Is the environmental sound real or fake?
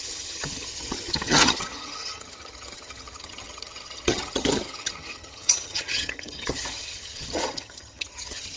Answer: fake